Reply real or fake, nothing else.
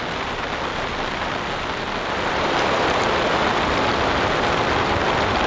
real